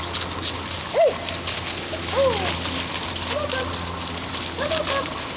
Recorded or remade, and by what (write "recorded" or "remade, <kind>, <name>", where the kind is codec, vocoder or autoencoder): recorded